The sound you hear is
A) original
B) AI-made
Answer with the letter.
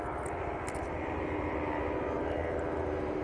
A